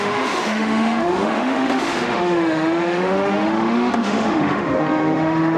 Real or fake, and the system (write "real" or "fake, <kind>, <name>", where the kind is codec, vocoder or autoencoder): fake, autoencoder, DAC-VAE